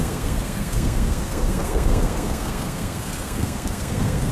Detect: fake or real fake